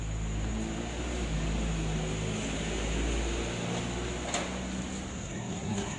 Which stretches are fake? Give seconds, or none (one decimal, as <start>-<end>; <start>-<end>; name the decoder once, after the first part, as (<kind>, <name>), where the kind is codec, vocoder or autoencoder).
5.1-6.0 (codec, SNAC)